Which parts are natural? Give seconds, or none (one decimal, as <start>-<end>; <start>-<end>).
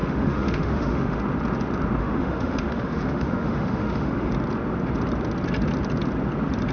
1.2-2.0; 4.3-6.7